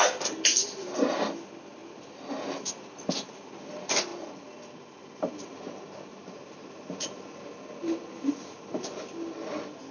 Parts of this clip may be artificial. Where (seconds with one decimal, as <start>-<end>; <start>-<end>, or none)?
none

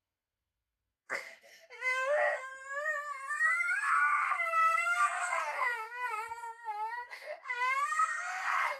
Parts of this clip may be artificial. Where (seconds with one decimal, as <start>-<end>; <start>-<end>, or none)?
0.0-2.5; 3.3-8.8

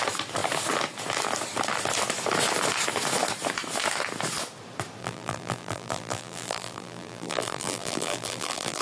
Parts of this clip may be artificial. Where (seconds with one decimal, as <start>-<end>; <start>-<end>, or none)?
5.0-8.8

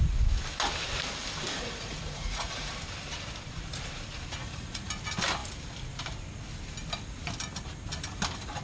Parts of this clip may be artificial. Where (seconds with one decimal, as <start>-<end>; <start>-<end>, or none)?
1.5-2.7; 4.4-4.9

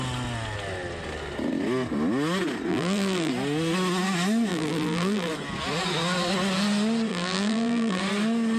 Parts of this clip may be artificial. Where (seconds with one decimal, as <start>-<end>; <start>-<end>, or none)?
2.7-3.3; 4.5-5.3; 7.1-8.0

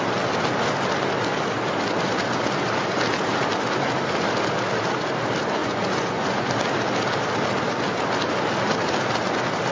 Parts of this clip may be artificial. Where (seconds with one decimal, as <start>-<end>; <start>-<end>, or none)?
5.6-6.5

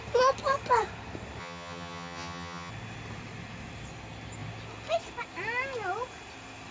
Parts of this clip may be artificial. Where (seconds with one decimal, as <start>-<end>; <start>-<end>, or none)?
1.4-2.7

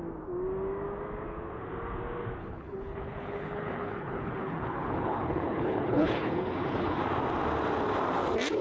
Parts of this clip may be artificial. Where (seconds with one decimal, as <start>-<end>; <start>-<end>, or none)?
2.4-7.0